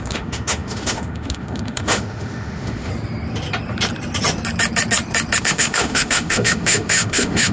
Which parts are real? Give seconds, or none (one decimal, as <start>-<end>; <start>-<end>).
2.9-5.4